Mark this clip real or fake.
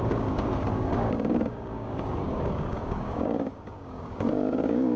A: fake